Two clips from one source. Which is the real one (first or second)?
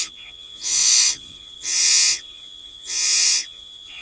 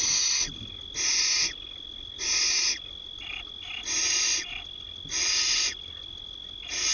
second